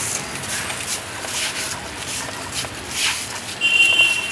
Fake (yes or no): no